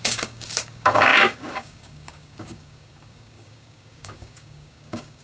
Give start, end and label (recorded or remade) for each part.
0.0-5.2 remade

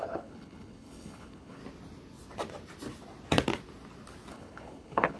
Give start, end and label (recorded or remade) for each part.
0.0-1.6 remade; 1.6-4.3 recorded; 4.3-5.2 remade

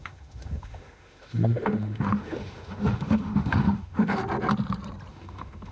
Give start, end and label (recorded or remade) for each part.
0.0-4.2 remade; 4.2-5.1 recorded; 5.1-5.7 remade

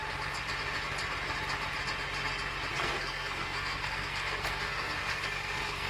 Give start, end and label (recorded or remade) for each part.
0.0-2.7 recorded; 2.7-5.9 remade